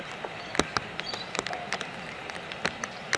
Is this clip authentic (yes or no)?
yes